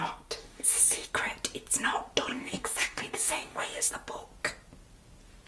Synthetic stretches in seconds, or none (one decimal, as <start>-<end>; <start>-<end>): 0.4-1.1; 2.3-3.9